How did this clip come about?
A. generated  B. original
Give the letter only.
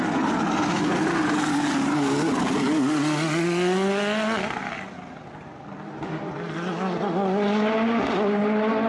B